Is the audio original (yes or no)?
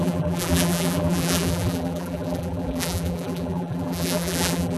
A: no